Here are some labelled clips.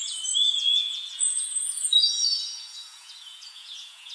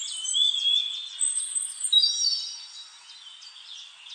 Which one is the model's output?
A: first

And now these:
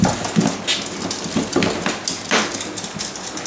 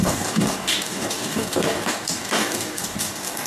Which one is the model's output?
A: second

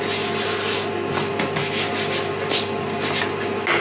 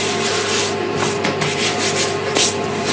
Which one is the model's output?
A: second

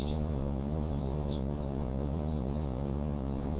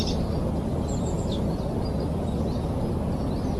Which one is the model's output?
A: first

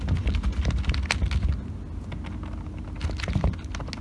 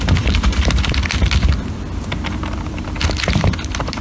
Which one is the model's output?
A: second